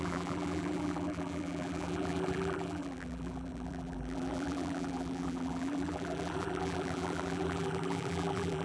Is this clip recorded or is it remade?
remade